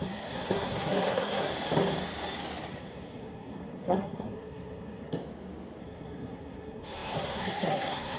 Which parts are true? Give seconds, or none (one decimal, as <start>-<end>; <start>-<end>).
1.5-2.7; 5.2-5.8

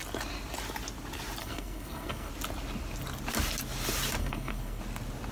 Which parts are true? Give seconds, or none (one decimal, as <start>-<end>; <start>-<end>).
0.0-1.4; 2.3-4.2; 4.8-5.3

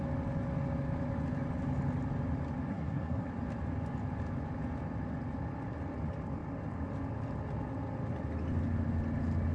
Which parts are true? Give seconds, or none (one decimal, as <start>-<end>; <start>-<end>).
0.0-2.7; 3.3-9.5

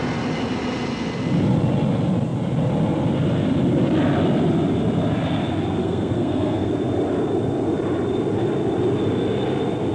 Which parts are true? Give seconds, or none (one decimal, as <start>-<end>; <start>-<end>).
0.0-5.8; 6.7-9.9